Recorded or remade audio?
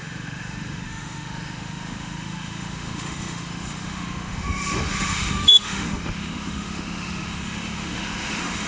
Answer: remade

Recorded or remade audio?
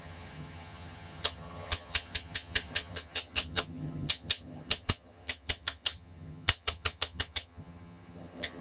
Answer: remade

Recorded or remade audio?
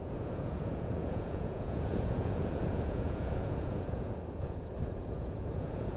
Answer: remade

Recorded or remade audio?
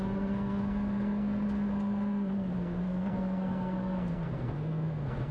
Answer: remade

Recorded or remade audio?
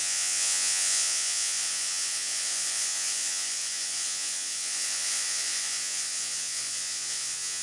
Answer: remade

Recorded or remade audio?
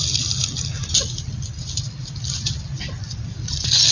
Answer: recorded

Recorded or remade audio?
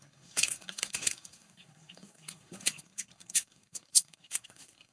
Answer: remade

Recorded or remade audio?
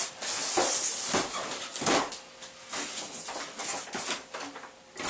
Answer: recorded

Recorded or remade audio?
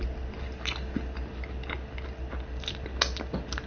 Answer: recorded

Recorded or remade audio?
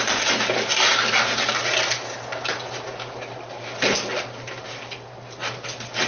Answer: recorded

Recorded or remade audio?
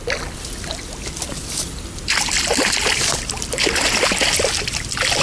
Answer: recorded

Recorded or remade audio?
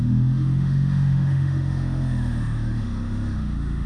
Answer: remade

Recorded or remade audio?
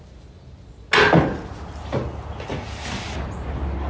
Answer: recorded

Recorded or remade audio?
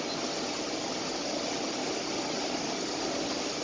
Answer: recorded